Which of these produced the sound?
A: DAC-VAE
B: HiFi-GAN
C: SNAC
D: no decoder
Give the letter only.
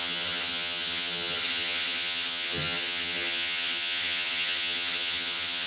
B